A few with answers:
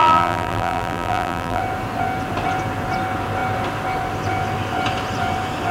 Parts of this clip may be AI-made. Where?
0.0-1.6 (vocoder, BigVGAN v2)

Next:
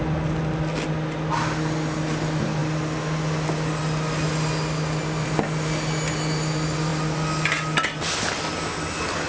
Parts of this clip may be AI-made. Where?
none

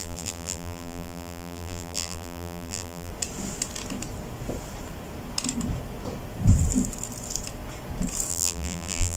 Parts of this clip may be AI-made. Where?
0.0-3.1 (vocoder, BigVGAN v2); 8.3-9.2

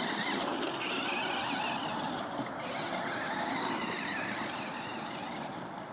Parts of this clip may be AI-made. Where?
none